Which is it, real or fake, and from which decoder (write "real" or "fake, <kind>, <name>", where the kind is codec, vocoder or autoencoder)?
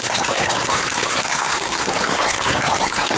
fake, codec, SNAC